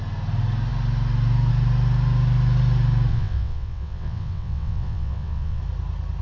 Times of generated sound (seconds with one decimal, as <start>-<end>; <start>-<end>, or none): 3.1-5.6